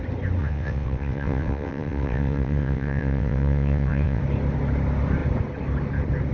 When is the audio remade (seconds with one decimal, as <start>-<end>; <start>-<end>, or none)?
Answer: 0.4-4.2